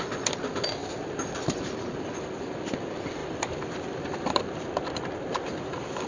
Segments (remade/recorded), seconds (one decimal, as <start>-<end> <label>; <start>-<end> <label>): 0.0-3.2 recorded; 3.2-6.1 remade